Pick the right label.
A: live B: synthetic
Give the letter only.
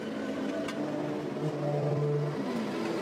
A